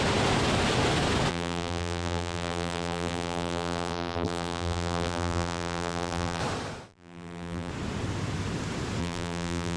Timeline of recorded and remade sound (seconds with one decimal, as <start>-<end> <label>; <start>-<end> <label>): 0.0-1.3 recorded; 1.3-6.4 remade; 6.4-6.9 recorded; 6.9-7.7 remade; 7.7-9.0 recorded; 9.0-9.8 remade